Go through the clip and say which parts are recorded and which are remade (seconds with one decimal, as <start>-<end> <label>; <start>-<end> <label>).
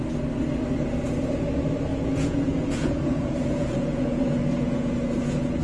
0.0-1.9 recorded; 1.9-5.6 remade